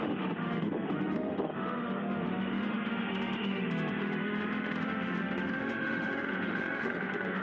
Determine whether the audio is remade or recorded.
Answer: remade